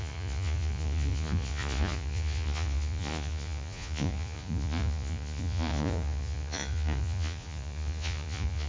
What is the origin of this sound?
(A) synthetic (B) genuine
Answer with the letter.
A